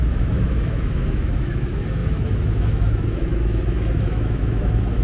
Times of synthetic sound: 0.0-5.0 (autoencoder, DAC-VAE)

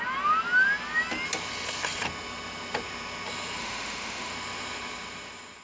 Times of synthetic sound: 3.6-4.3 (autoencoder, DAC-VAE)

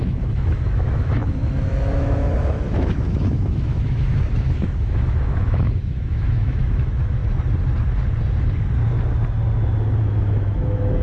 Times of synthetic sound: 0.0-7.2 (autoencoder, DAC-VAE); 10.0-11.0

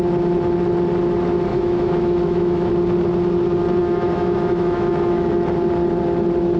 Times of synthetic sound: 1.5-2.7 (autoencoder, DAC-VAE); 3.8-5.3

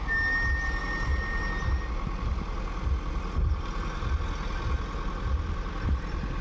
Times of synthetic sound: none

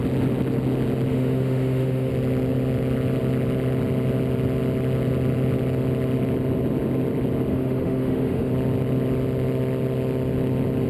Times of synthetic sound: 1.1-2.1 (autoencoder, DAC-VAE); 7.5-8.5

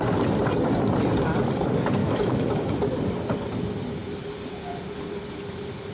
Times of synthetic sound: 2.0-2.7 (autoencoder, DAC-VAE)

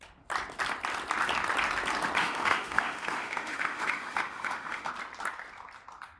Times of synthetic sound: 2.2-4.9 (autoencoder, DAC-VAE)